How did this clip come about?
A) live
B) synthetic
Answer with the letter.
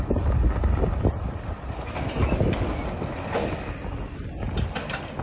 A